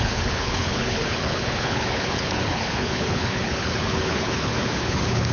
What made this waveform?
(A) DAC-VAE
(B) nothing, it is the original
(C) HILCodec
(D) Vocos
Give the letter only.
C